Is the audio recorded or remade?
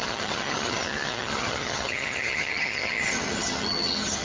remade